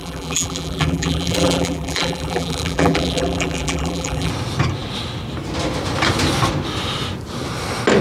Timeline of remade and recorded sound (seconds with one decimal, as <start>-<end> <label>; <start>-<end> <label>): 0.0-4.3 remade; 4.3-8.0 recorded